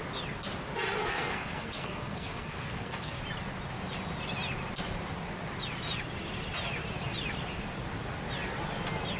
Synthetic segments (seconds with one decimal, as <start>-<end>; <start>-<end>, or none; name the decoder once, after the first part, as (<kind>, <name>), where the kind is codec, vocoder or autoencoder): 1.0-3.2 (codec, SNAC)